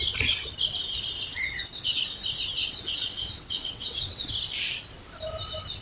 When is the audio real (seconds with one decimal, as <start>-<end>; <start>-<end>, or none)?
0.0-1.3; 2.0-2.6; 4.3-5.8